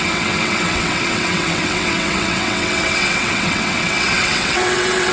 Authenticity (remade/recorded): remade